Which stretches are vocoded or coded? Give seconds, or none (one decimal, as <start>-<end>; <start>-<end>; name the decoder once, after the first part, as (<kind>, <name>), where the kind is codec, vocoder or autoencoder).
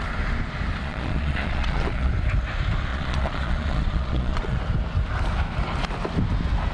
0.8-2.1 (vocoder, Vocos); 2.9-4.6